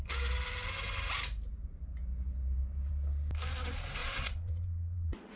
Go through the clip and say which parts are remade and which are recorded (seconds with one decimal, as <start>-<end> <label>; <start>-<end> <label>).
0.0-4.0 recorded; 4.0-5.4 remade